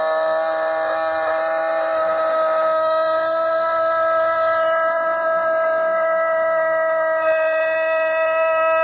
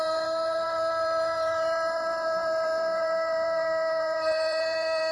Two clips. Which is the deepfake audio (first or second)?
second